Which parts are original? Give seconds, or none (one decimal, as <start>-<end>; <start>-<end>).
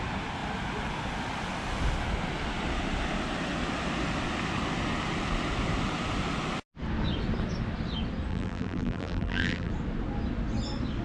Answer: 0.0-8.3; 9.7-11.0